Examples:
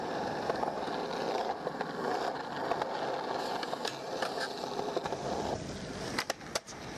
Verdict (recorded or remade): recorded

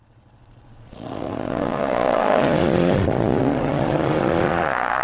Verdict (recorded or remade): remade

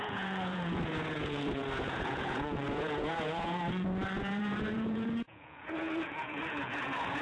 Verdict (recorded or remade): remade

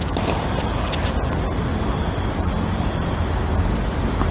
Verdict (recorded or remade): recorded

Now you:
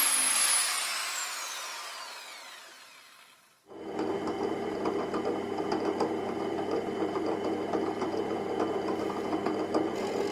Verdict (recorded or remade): recorded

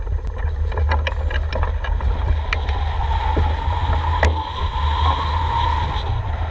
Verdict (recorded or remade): recorded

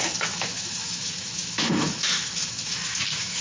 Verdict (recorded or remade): remade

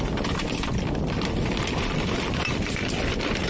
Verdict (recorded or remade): recorded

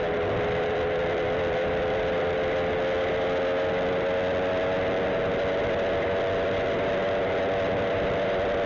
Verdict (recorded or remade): recorded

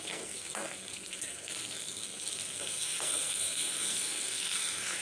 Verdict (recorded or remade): remade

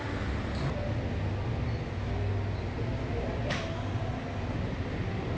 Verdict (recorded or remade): recorded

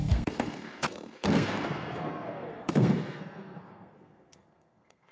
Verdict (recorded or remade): remade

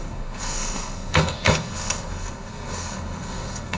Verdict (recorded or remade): remade